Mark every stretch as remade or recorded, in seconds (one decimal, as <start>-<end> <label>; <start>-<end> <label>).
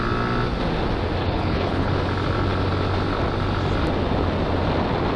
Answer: 0.0-1.2 recorded; 1.2-1.9 remade; 1.9-5.2 recorded